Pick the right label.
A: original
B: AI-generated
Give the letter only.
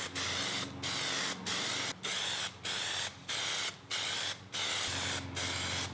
A